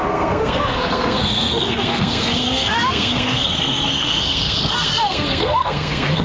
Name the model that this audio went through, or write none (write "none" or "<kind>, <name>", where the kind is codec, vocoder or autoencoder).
codec, SNAC